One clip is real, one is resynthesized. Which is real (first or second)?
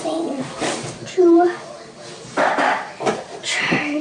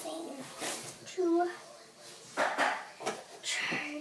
second